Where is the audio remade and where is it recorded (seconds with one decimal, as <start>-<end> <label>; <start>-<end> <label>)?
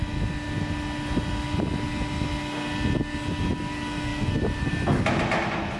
0.0-4.1 recorded; 4.1-4.7 remade; 4.7-5.8 recorded